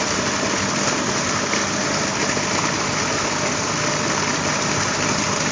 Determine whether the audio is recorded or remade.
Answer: recorded